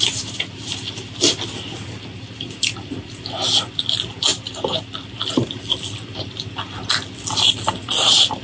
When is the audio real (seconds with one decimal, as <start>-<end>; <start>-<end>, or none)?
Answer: 0.0-8.4